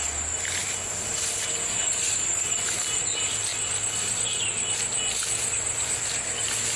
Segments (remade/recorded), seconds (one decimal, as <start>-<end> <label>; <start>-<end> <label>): 0.0-6.8 recorded